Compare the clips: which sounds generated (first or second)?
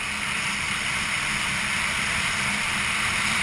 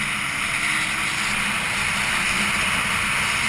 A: first